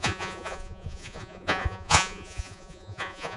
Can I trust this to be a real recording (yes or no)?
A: no